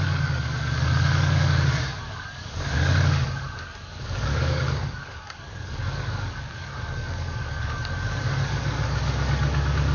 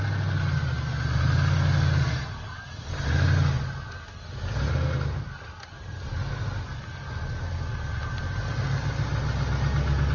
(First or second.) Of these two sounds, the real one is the second